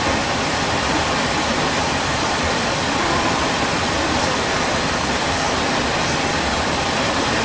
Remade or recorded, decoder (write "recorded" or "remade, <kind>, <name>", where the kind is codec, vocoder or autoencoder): remade, vocoder, BigVGAN v2